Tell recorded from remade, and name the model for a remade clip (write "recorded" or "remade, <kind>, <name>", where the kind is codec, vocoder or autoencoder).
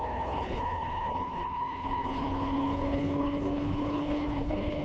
remade, codec, HILCodec